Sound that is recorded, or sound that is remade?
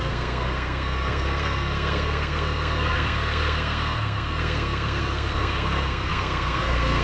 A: remade